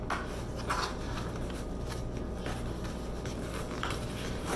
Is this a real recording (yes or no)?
yes